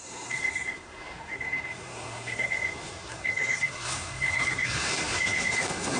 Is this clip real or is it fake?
fake